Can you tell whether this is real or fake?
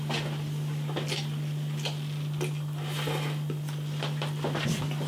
real